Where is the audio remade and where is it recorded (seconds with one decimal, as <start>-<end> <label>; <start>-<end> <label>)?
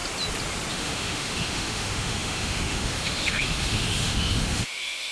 0.0-0.7 recorded; 0.7-5.1 remade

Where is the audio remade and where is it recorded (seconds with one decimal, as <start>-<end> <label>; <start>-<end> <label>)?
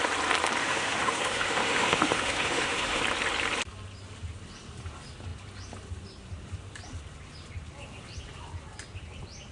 0.0-0.6 recorded; 0.6-3.0 remade; 3.0-9.5 recorded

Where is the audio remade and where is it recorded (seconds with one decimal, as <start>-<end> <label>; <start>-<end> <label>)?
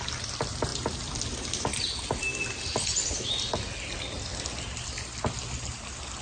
0.0-6.2 recorded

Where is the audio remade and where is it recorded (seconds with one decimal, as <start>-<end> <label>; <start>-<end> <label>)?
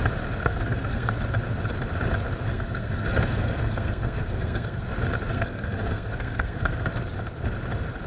0.0-0.4 recorded; 0.4-1.1 remade; 1.1-2.5 recorded; 2.5-4.8 remade; 4.8-5.3 recorded; 5.3-6.9 remade; 6.9-8.1 recorded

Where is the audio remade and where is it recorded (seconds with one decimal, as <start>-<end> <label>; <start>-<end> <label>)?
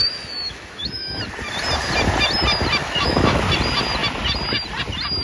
0.0-1.2 remade; 1.2-2.8 recorded; 2.8-3.4 remade; 3.4-5.2 recorded